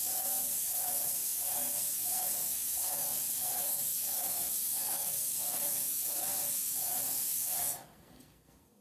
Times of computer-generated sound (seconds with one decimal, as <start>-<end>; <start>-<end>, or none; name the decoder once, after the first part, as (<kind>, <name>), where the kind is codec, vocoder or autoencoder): 0.0-8.8 (codec, SNAC)